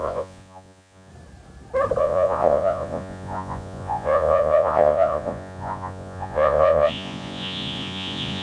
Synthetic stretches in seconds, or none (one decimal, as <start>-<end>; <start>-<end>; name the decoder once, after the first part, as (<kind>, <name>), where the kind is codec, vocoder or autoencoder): 0.0-1.1 (vocoder, Vocos); 2.0-8.4

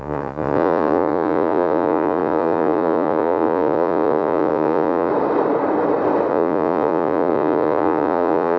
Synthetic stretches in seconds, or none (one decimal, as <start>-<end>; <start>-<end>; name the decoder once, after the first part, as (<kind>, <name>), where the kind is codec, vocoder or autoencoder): 0.0-5.1 (vocoder, Vocos); 6.3-8.6